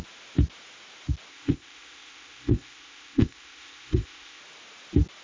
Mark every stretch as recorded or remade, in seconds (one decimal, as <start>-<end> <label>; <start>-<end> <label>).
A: 0.0-1.3 recorded; 1.3-4.4 remade; 4.4-5.2 recorded